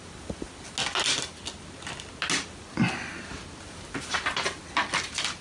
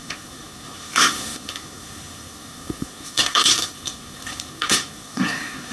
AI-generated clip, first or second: second